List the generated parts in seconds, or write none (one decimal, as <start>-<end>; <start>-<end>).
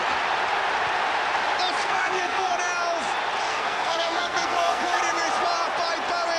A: 1.8-2.5; 3.5-5.0